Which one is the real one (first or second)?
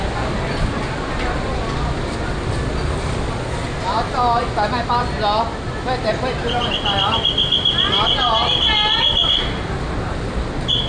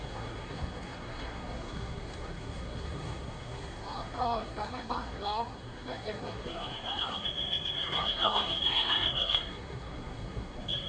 first